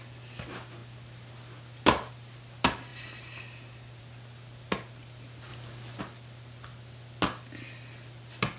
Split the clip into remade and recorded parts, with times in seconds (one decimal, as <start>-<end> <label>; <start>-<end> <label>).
0.0-8.6 recorded